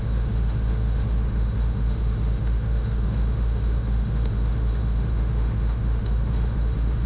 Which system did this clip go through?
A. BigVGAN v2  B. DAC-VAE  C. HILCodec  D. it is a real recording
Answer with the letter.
B